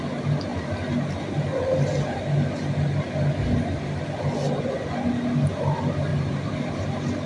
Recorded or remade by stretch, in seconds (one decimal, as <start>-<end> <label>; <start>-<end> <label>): 0.0-6.1 recorded; 6.1-6.7 remade; 6.7-7.3 recorded